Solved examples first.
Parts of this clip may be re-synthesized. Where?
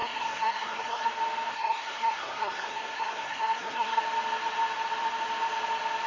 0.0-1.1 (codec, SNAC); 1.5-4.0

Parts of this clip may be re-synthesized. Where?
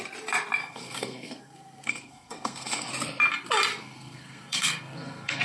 0.6-2.9 (codec, SNAC); 3.7-5.4